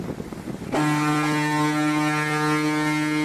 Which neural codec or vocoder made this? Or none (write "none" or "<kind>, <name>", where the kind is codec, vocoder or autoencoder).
none